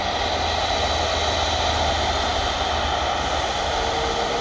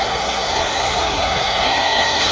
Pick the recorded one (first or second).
first